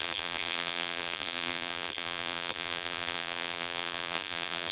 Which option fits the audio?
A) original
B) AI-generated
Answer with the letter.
B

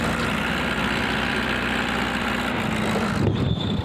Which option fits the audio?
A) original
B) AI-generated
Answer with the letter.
B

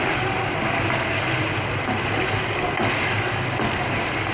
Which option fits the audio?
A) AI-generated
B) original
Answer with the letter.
B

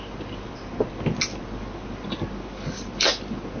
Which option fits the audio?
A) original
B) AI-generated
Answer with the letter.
A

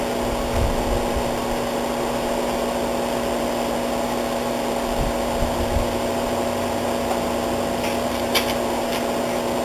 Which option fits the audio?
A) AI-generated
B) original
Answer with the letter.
B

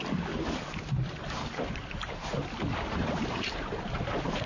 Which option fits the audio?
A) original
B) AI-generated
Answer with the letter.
B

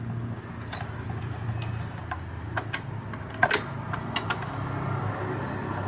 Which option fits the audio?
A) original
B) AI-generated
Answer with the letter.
A